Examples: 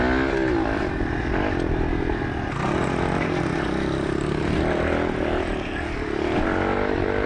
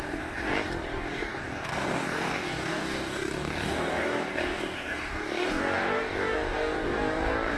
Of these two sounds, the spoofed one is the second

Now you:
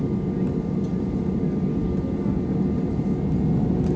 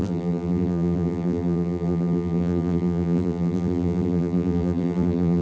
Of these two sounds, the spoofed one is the second